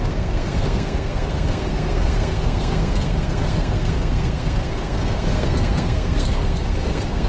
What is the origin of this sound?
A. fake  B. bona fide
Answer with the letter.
A